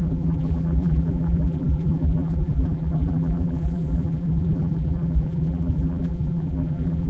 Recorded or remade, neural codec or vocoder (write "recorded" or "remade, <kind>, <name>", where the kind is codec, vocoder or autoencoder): remade, vocoder, BigVGAN v2